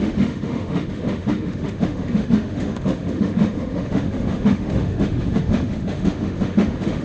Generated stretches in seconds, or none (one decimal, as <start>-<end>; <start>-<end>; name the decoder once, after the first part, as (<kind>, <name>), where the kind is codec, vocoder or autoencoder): 0.0-7.0 (autoencoder, DAC-VAE)